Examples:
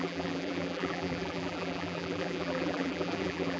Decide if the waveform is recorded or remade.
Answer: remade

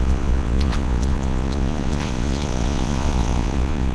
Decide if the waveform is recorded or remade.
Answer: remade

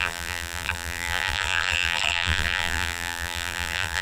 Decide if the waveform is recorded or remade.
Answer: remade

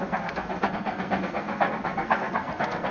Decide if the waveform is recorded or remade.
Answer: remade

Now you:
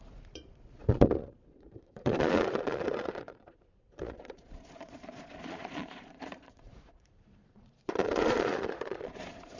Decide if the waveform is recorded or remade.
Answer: remade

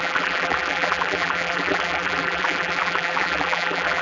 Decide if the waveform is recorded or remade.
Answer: remade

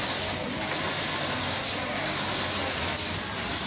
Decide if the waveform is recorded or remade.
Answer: recorded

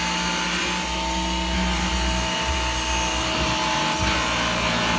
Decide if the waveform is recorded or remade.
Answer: recorded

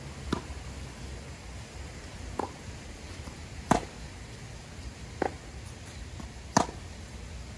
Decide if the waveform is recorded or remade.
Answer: recorded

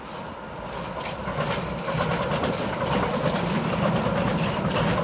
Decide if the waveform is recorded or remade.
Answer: recorded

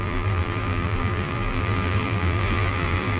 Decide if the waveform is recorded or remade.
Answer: remade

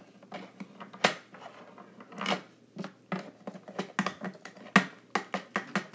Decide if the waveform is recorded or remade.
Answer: recorded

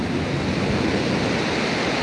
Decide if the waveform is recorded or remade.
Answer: recorded